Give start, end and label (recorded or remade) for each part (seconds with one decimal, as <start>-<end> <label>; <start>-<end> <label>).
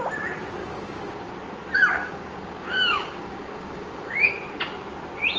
0.0-0.6 recorded; 0.6-1.3 remade; 1.3-2.0 recorded; 2.0-4.3 remade; 4.3-5.4 recorded